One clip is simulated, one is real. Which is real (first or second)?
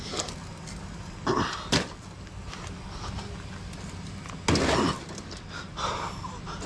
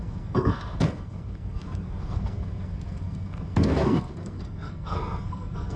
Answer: first